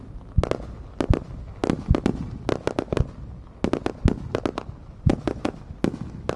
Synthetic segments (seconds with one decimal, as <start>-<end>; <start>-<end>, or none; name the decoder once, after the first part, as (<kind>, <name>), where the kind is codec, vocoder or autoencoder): 4.8-5.6 (vocoder, Vocos)